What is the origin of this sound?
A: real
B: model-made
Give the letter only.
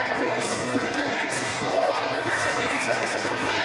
B